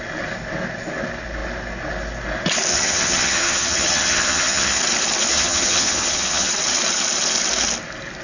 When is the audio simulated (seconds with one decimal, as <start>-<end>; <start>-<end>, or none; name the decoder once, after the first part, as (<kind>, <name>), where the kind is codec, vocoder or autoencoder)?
2.7-4.8 (vocoder, HiFi-GAN); 5.3-6.5